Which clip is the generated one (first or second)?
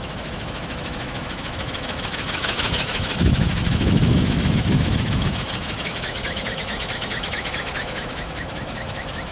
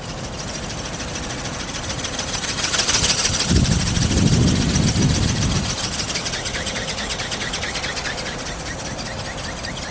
first